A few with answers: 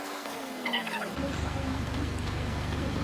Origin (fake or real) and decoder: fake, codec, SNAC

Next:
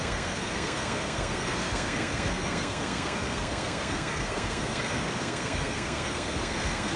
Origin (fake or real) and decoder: fake, codec, SNAC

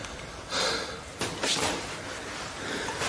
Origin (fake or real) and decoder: real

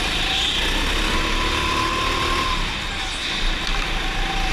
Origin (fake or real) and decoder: real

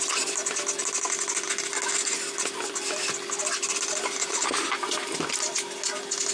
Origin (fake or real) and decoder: real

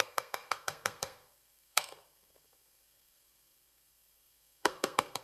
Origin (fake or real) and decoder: fake, codec, SNAC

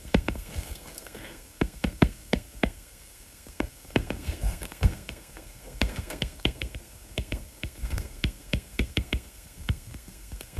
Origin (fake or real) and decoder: fake, codec, SNAC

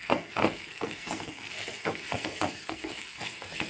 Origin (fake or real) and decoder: fake, codec, SNAC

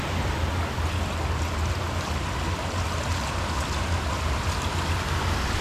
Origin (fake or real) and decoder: real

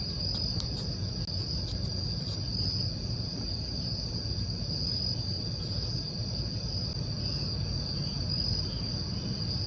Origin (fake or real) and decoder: real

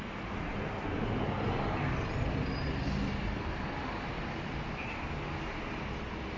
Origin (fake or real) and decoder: real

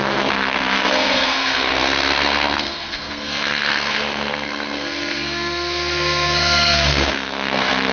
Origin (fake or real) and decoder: fake, codec, SNAC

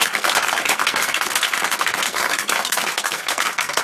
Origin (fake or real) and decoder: fake, codec, SNAC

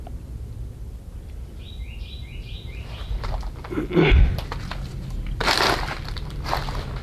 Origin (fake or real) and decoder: real